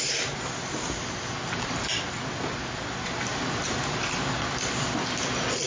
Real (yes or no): yes